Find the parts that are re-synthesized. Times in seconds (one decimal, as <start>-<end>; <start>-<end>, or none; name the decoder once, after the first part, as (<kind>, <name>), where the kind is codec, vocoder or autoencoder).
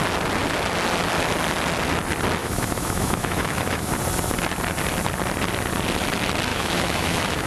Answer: 2.4-3.9 (autoencoder, DAC-VAE); 6.5-7.5